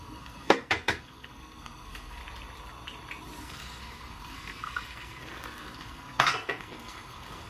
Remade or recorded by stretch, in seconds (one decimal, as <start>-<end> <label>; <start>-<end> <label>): 0.0-2.2 remade; 2.2-3.4 recorded; 3.4-7.5 remade